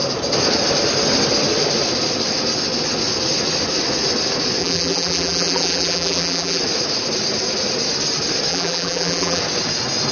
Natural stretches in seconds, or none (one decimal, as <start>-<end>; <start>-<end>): 0.0-4.6; 6.6-8.5; 9.4-10.1